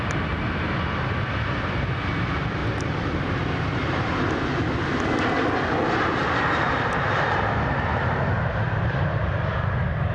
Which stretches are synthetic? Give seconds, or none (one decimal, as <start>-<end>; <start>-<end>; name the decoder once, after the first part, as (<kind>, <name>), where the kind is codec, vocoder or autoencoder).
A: 2.6-4.2 (vocoder, BigVGAN v2); 6.2-9.3

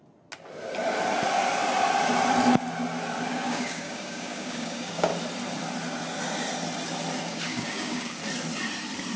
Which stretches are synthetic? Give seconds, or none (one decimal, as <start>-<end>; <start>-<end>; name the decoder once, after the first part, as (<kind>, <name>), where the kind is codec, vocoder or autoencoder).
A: 3.3-5.1 (codec, DAC); 7.3-8.2